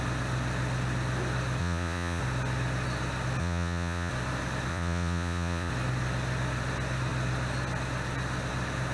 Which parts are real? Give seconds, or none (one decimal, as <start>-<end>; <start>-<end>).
0.0-1.6; 2.2-3.4; 4.1-4.7; 5.7-8.9